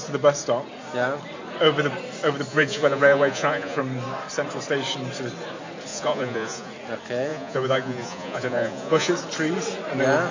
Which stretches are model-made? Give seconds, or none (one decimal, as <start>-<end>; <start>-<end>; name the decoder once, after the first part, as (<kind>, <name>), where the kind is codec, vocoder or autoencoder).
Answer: 2.5-3.8 (vocoder, Vocos); 5.9-6.7; 7.3-9.1